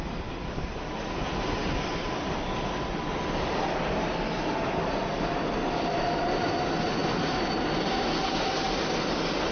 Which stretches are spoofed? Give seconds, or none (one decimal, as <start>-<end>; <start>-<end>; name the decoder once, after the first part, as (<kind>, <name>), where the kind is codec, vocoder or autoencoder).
none